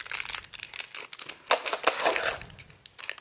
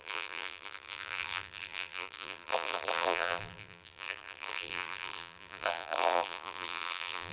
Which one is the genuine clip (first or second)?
first